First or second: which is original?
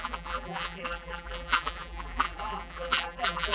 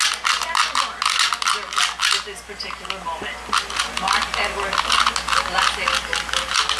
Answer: second